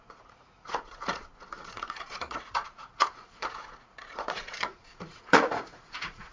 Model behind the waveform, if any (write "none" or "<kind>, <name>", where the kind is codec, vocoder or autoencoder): vocoder, Vocos